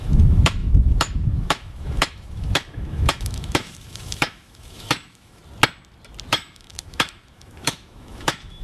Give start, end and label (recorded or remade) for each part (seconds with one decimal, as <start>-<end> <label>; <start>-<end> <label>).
0.0-5.4 remade; 5.4-6.3 recorded; 6.3-8.6 remade